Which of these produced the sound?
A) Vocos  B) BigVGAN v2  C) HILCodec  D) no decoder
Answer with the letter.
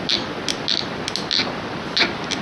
D